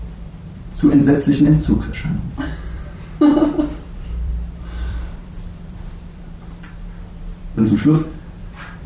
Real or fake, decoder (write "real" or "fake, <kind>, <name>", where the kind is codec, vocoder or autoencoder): fake, vocoder, BigVGAN v2